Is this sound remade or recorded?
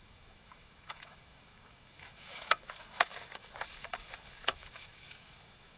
remade